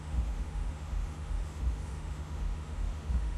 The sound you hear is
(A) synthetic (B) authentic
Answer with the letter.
A